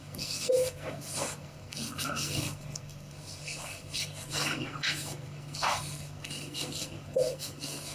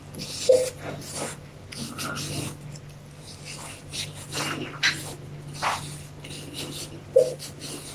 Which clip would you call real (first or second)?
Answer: second